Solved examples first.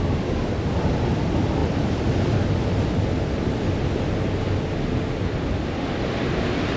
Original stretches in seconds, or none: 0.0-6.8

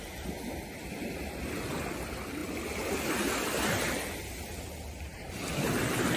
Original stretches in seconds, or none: 0.0-2.4; 4.2-5.1; 5.7-6.2

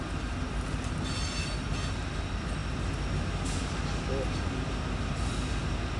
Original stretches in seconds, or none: 0.0-6.0

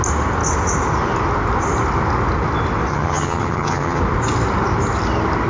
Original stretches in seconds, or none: 0.0-2.9; 4.0-5.5